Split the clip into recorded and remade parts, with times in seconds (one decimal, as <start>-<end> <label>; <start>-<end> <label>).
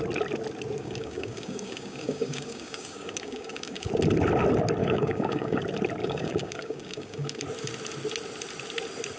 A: 0.0-0.8 recorded; 0.8-3.9 remade; 3.9-4.8 recorded; 4.8-5.6 remade; 5.6-6.0 recorded; 6.0-7.4 remade; 7.4-9.2 recorded